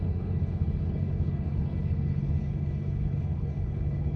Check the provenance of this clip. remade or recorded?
remade